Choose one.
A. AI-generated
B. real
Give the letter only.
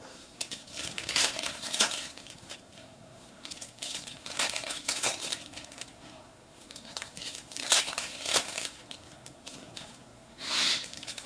A